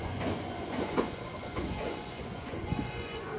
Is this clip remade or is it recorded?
remade